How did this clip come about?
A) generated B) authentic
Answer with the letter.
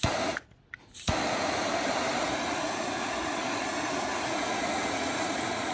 A